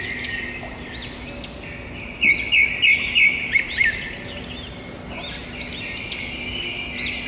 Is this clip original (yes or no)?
yes